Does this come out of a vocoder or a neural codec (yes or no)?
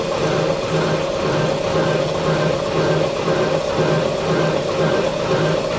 no